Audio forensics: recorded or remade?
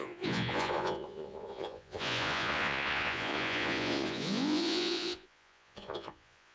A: remade